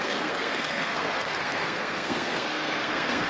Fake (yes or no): yes